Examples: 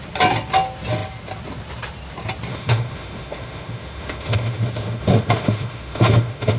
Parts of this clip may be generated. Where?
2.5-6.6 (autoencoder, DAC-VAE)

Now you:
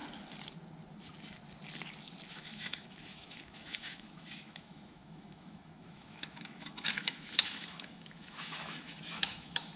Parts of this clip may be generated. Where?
2.3-9.8 (autoencoder, DAC-VAE)

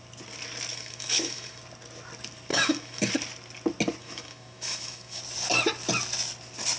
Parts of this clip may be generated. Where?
0.7-1.6 (autoencoder, DAC-VAE); 2.5-3.1; 4.0-5.2

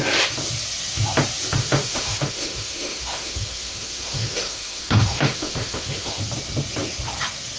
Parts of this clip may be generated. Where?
1.6-6.2 (autoencoder, DAC-VAE)